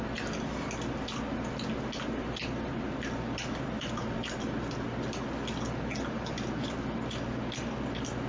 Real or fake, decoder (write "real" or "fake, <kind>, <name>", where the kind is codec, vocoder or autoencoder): real